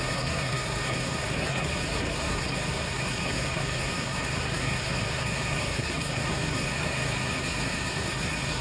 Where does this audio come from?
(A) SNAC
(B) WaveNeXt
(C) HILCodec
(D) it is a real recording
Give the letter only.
A